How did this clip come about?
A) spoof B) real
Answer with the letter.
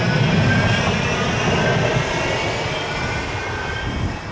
B